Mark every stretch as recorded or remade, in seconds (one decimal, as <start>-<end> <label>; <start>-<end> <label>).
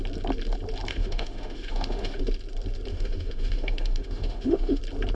0.0-0.9 recorded; 0.9-2.2 remade; 2.2-2.9 recorded; 2.9-4.8 remade; 4.8-5.2 recorded